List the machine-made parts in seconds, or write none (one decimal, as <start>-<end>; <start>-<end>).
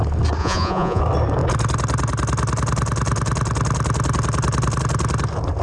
0.4-1.0